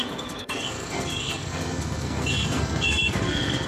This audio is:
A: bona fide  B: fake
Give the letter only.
B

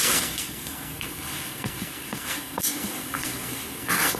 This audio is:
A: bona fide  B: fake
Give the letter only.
B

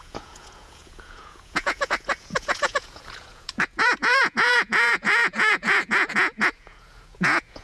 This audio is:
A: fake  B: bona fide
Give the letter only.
A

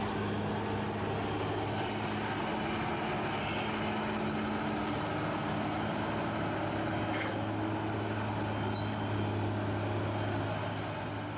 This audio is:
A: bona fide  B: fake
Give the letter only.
A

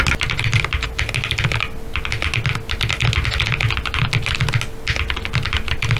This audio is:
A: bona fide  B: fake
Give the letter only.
A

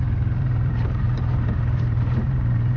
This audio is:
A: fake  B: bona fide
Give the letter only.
A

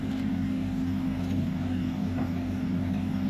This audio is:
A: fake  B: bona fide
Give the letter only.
A